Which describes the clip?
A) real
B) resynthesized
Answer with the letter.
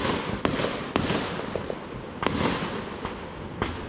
A